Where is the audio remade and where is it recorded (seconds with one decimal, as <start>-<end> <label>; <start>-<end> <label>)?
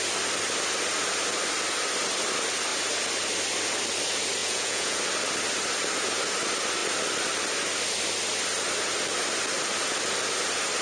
0.0-4.4 recorded; 4.4-5.0 remade; 5.0-10.8 recorded